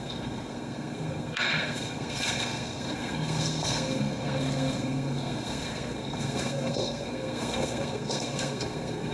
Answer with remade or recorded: remade